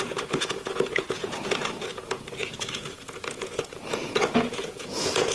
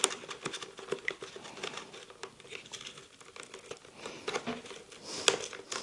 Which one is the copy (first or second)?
first